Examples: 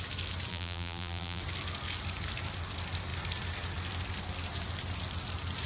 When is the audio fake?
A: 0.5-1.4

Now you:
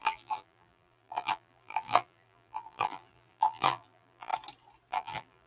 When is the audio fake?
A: 0.0-4.3; 4.9-5.5

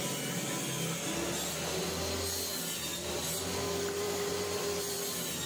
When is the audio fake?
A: 2.5-5.1

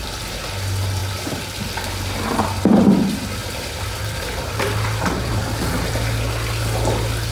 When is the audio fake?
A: 3.4-6.3

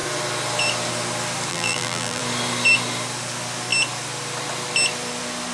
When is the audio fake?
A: 1.5-2.2